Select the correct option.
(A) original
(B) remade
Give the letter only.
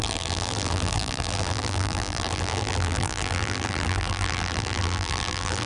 B